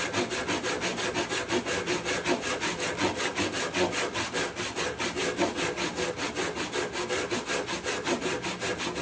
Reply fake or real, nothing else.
real